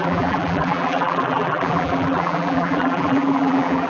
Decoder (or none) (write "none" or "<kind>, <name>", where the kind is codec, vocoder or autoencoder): vocoder, BigVGAN v2